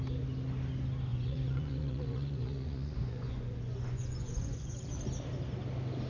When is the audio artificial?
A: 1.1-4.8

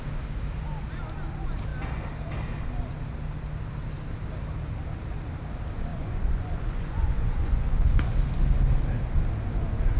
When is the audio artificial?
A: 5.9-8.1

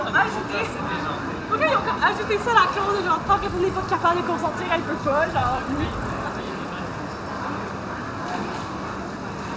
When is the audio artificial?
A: 5.4-6.0